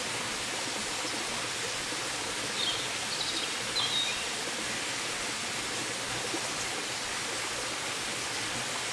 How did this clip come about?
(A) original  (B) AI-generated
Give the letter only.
A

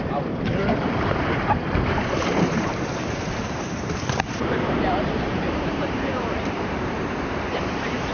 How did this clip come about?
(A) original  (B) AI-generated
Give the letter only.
B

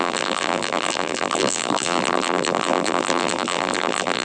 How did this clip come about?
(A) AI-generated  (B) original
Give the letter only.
A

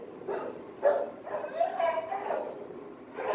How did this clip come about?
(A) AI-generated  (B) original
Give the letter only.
A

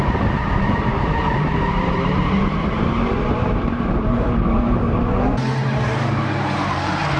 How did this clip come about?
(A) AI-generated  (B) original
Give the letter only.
A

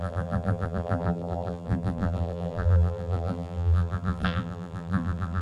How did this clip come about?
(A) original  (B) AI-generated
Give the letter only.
B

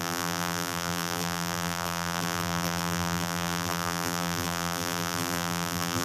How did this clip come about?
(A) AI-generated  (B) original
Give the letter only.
A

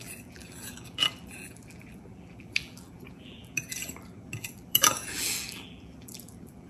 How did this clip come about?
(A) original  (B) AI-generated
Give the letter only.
B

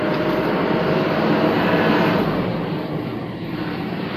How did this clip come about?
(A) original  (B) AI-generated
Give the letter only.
A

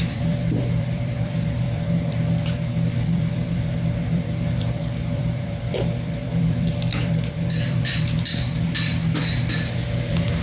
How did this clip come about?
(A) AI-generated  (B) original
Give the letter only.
A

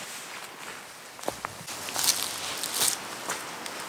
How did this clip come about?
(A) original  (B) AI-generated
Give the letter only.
A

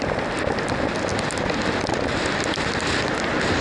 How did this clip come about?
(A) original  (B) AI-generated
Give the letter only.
A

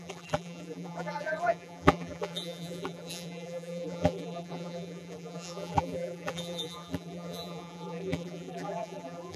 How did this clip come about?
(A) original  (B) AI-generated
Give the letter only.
B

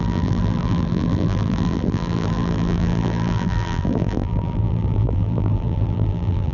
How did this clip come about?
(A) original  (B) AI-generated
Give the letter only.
B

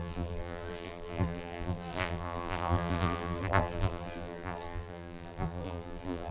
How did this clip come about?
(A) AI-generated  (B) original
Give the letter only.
A